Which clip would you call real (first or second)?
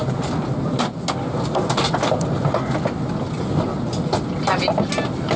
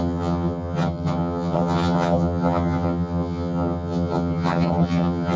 first